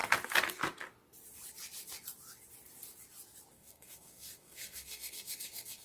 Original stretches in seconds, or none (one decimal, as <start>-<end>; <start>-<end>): 0.0-3.5